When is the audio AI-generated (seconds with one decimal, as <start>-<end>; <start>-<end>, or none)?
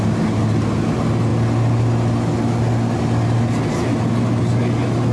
none